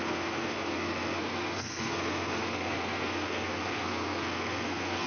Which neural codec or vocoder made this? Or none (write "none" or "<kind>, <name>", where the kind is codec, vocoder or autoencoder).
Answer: codec, SNAC